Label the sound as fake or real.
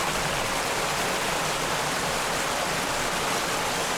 real